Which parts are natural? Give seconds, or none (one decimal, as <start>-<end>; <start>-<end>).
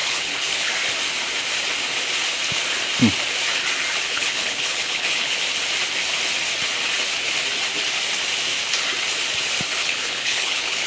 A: 0.7-4.0; 5.4-9.8